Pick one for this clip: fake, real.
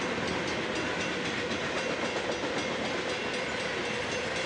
real